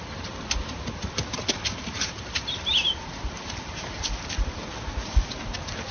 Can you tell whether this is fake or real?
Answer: real